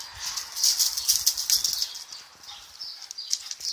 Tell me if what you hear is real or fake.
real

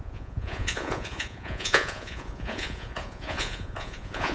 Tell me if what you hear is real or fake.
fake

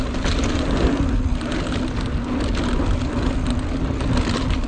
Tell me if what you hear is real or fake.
real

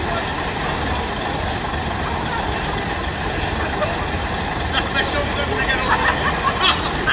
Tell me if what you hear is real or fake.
real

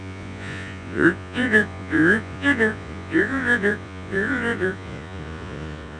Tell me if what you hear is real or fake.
fake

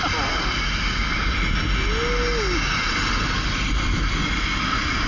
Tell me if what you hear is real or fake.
real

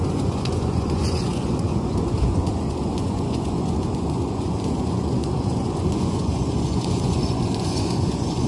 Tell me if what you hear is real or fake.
fake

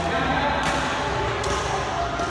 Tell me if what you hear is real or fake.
real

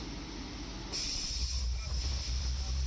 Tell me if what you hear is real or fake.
real